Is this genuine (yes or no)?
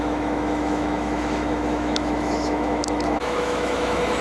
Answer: no